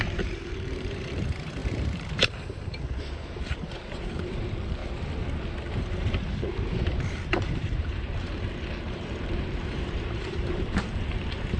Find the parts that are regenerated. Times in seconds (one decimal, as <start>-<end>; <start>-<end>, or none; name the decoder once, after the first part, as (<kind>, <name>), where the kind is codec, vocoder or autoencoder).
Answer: 0.0-4.8 (vocoder, BigVGAN v2); 5.8-11.6